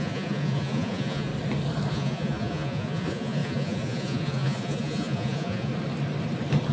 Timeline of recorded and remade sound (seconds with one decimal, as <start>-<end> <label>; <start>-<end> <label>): 0.0-1.3 remade; 1.3-1.9 recorded; 1.9-5.7 remade; 5.7-6.7 recorded